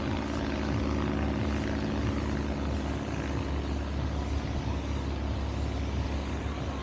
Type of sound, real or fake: real